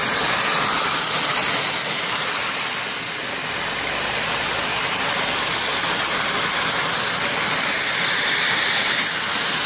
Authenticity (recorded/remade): recorded